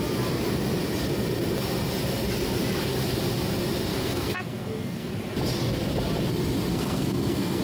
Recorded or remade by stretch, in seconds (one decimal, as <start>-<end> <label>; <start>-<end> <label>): 0.0-3.9 recorded; 3.9-5.1 remade; 5.1-6.7 recorded; 6.7-7.6 remade